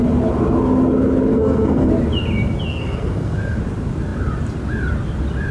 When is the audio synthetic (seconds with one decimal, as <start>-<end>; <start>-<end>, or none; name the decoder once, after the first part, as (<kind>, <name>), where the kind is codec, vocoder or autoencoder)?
1.3-1.9 (codec, SNAC); 2.7-3.6